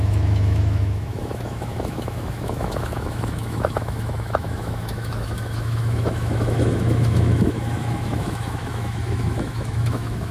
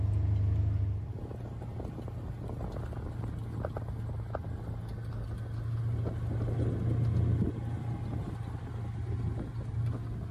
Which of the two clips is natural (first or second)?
second